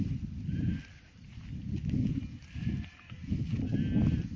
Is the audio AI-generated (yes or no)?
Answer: no